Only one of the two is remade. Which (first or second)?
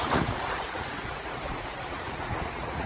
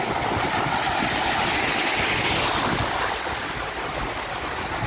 first